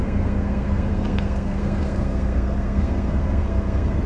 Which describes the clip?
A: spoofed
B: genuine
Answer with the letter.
A